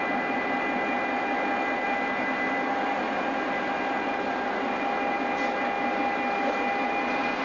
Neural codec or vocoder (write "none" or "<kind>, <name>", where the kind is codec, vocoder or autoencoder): none